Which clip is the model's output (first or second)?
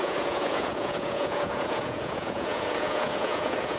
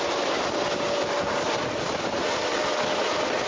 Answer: first